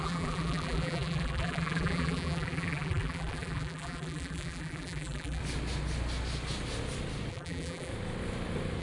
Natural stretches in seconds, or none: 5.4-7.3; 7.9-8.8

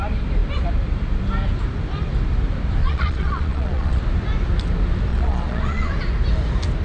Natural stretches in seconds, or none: 0.0-2.8; 4.0-5.1; 5.9-6.8